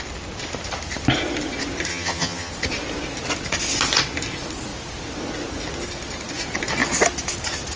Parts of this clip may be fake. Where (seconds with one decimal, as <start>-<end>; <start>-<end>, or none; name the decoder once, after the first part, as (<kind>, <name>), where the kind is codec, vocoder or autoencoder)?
1.9-2.5 (vocoder, HiFi-GAN)

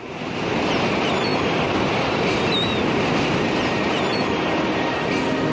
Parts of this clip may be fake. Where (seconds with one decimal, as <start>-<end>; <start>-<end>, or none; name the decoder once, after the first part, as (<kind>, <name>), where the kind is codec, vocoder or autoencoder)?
none